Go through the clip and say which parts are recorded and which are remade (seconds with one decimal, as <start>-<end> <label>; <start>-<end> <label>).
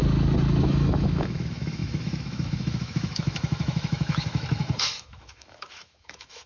0.0-0.6 recorded; 0.6-6.5 remade